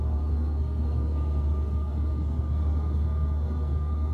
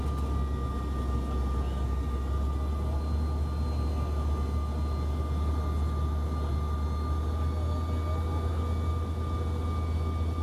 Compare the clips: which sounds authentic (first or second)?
second